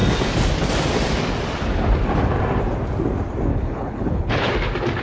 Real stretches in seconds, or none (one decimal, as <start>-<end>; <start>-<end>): 0.0-3.5; 4.5-5.0